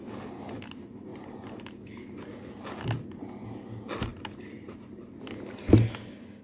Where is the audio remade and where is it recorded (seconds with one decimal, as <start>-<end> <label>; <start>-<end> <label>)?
0.0-1.1 recorded; 1.1-1.7 remade; 1.7-4.1 recorded; 4.1-5.2 remade; 5.2-6.4 recorded